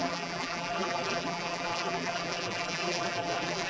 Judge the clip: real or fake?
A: fake